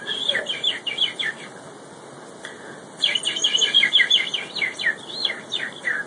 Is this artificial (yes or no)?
no